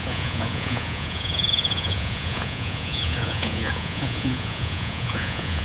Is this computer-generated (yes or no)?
yes